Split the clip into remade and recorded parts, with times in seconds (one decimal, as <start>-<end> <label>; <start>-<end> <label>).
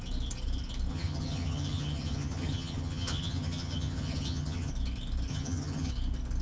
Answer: 0.0-0.9 recorded; 0.9-4.7 remade; 4.7-5.3 recorded; 5.3-5.9 remade; 5.9-6.4 recorded